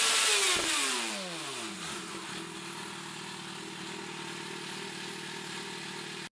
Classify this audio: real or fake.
real